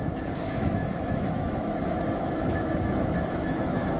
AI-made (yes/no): yes